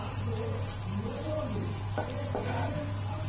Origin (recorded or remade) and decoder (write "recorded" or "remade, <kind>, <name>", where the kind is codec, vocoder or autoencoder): recorded